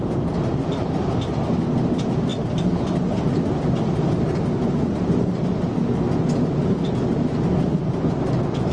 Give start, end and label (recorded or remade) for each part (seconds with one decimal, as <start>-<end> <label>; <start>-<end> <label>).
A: 0.0-8.7 recorded